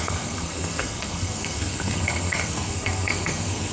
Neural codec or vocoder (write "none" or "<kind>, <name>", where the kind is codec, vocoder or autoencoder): codec, SNAC